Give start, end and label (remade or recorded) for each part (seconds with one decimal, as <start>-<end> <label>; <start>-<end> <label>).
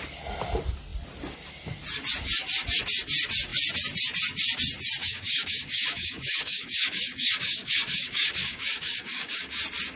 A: 0.0-5.0 recorded; 5.0-9.6 remade; 9.6-10.0 recorded